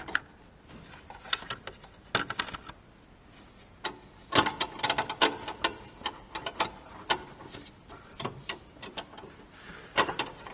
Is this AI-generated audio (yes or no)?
no